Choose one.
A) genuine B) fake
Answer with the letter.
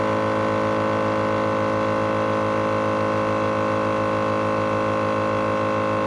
A